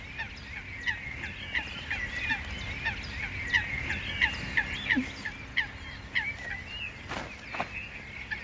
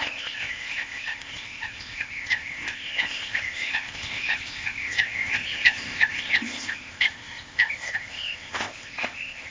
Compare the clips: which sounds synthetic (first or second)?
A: second